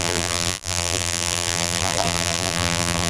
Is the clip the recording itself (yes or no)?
no